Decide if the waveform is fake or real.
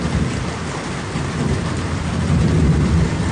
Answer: real